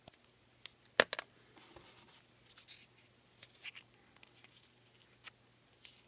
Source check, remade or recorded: recorded